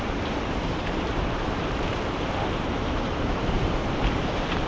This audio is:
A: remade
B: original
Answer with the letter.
A